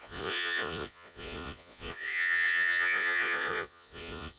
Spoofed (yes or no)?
yes